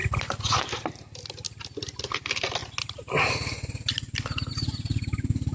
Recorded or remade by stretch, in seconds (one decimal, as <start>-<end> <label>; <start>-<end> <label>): 0.0-5.5 recorded